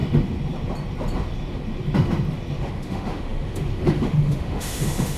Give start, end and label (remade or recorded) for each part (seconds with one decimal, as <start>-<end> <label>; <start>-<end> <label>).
0.0-2.6 recorded; 2.6-5.2 remade